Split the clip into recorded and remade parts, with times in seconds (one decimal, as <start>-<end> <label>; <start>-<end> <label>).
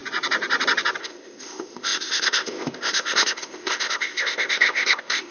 0.0-1.0 recorded; 1.0-5.3 remade